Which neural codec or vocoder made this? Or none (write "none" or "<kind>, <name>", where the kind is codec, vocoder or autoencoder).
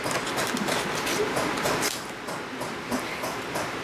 none